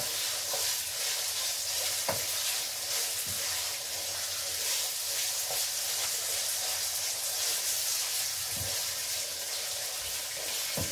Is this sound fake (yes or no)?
no